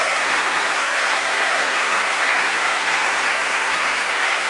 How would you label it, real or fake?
fake